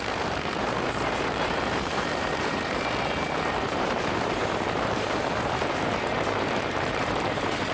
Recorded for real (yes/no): no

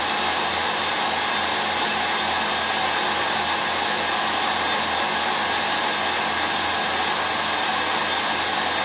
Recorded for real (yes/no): yes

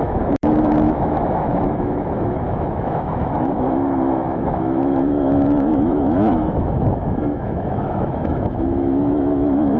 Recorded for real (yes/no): no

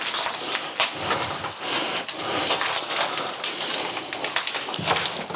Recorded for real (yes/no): yes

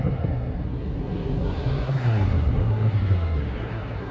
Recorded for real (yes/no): no